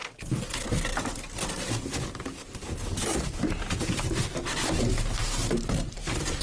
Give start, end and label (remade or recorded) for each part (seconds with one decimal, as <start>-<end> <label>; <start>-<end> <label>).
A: 0.0-6.4 recorded